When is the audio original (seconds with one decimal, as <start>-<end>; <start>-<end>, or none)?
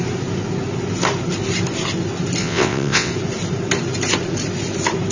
0.0-2.4; 3.1-5.1